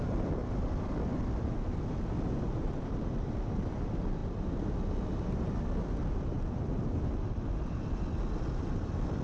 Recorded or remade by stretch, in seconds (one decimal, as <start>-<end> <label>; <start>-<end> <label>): 0.0-9.2 recorded